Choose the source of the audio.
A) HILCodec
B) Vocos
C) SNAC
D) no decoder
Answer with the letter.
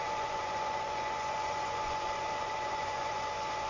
B